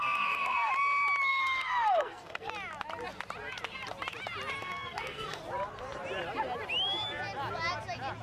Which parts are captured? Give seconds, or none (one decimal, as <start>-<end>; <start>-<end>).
0.7-1.3; 2.5-4.6; 5.4-8.2